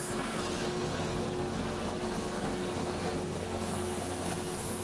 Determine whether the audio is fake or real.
fake